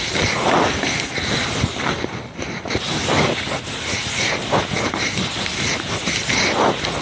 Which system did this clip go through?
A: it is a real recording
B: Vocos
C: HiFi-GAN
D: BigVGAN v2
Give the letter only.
A